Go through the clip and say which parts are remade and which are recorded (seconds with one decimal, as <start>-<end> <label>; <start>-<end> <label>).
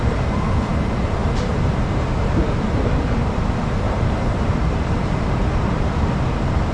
0.0-6.7 remade